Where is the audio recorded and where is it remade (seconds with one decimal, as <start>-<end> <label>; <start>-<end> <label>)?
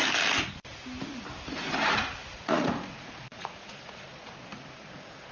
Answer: 0.0-2.3 recorded; 2.3-5.3 remade